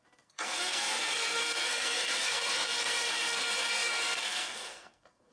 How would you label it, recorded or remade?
remade